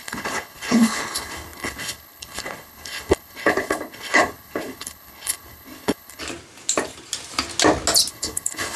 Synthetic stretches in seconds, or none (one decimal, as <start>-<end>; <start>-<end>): 0.0-6.2; 8.1-8.8